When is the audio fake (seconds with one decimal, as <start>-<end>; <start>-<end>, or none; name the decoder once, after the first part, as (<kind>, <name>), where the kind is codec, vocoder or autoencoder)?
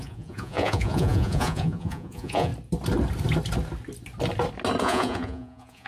0.0-2.5 (vocoder, Vocos); 4.8-5.9